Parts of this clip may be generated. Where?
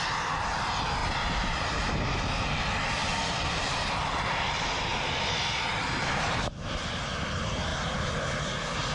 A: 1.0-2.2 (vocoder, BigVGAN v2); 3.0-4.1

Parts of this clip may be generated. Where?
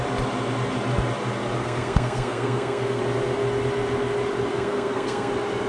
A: 1.6-3.0 (codec, SNAC); 4.5-5.3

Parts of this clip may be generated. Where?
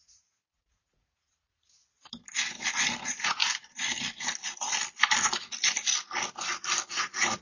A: 0.0-1.8 (vocoder, Vocos); 3.0-3.4; 6.9-7.4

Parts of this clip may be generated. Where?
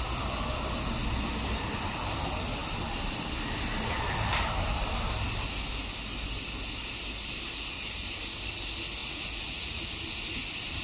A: 9.0-9.8 (vocoder, Vocos)